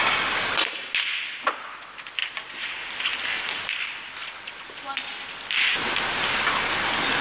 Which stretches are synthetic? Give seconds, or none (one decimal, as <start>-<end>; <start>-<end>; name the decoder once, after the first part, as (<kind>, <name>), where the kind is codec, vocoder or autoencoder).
2.2-3.8 (vocoder, BigVGAN v2)

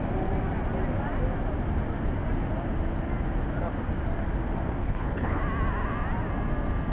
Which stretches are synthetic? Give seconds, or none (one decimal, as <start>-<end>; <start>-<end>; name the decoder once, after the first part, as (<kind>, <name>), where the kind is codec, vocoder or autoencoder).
4.8-5.4 (codec, HILCodec)

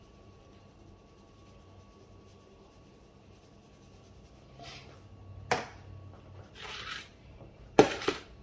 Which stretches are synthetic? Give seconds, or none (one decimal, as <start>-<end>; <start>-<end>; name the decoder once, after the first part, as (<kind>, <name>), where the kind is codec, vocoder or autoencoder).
0.0-1.4 (vocoder, BigVGAN v2); 6.4-8.4

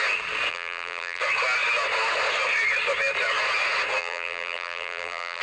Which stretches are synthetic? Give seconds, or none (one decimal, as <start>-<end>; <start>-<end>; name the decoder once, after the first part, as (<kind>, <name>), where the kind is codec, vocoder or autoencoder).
0.5-1.2 (vocoder, BigVGAN v2); 4.0-5.4